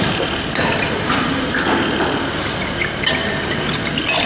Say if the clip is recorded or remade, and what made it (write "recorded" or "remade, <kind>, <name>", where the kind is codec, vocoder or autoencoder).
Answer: recorded